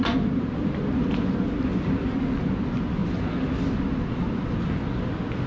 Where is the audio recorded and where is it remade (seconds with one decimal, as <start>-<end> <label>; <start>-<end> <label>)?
0.0-5.5 recorded